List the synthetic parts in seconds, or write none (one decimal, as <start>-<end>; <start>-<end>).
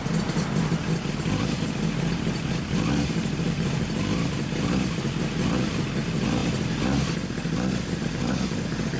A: none